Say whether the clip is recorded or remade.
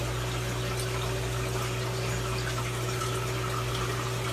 recorded